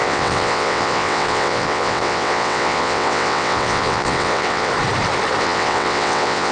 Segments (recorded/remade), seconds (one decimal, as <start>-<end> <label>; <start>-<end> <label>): 0.0-4.7 remade; 4.7-5.4 recorded; 5.4-6.5 remade

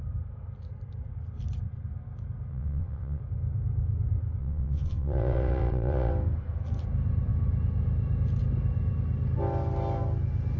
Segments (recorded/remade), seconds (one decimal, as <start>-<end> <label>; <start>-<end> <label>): 0.0-2.5 recorded; 2.5-3.2 remade; 3.2-4.4 recorded; 4.4-6.1 remade; 6.1-10.6 recorded

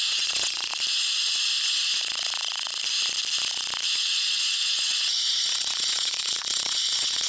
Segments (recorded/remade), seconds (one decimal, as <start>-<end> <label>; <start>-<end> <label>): 0.0-0.7 remade; 0.7-3.9 recorded; 3.9-7.3 remade

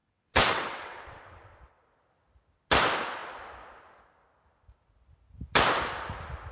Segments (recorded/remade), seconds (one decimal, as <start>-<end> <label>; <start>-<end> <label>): 0.0-1.8 remade; 1.8-6.5 recorded

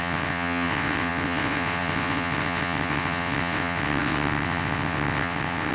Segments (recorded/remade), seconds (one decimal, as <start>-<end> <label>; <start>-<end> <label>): 0.0-5.7 remade

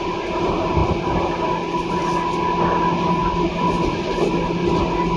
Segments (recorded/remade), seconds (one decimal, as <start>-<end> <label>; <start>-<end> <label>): 0.0-5.2 recorded